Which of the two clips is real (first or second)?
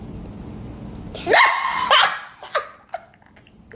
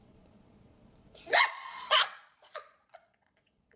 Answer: first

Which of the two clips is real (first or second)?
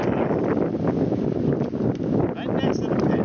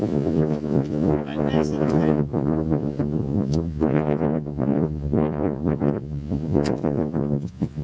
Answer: first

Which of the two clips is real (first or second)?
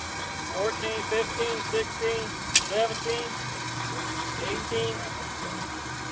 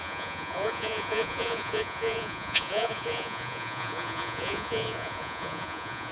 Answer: first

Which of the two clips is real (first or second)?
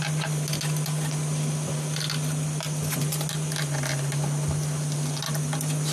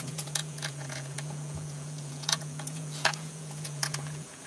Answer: first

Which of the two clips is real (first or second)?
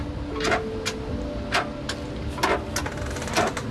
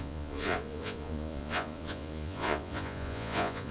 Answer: first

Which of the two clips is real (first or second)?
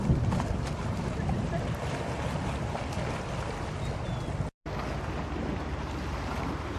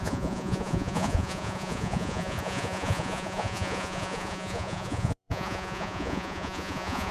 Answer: first